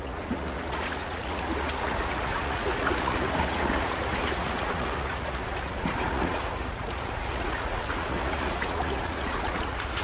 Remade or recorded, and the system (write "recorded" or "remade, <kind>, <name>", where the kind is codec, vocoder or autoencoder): remade, vocoder, Vocos